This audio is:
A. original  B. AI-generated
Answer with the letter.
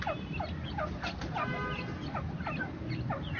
A